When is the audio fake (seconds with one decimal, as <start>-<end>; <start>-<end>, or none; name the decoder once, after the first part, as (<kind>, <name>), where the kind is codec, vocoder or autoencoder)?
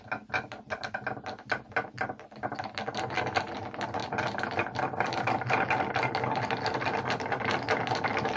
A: none